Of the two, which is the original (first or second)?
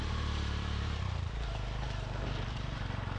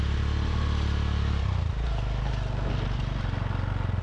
second